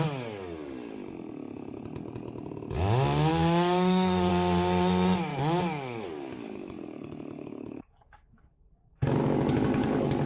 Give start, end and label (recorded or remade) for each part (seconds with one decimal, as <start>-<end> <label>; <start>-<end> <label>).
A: 0.0-3.3 recorded; 3.3-4.3 remade; 4.3-5.3 recorded; 5.3-10.3 remade